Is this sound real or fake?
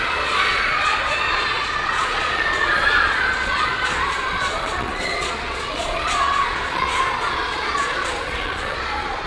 fake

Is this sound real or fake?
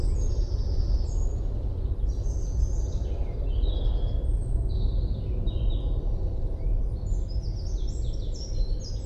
real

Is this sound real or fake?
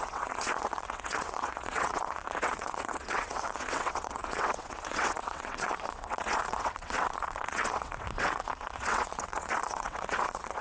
fake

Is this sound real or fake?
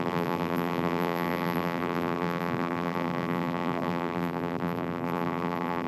fake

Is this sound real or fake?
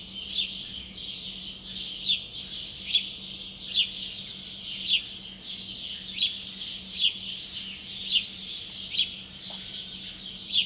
real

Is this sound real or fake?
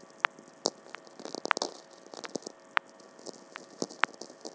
real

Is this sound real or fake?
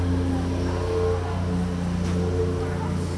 real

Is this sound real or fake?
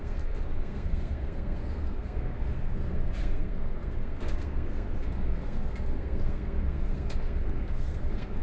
fake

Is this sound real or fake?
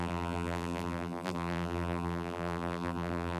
fake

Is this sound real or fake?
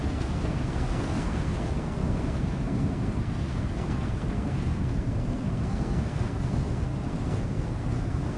fake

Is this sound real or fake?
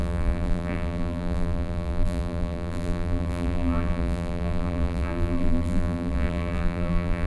fake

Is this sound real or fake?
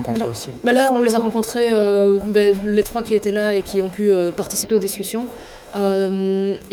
fake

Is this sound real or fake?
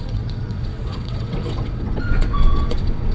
fake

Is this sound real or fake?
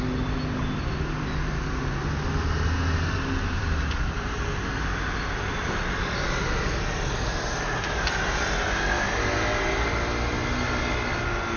real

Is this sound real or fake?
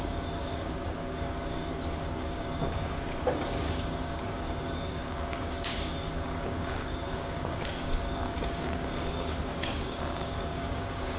fake